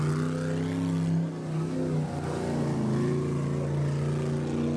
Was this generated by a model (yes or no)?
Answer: no